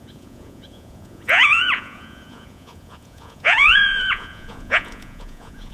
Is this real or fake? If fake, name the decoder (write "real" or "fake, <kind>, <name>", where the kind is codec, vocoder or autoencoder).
fake, vocoder, Vocos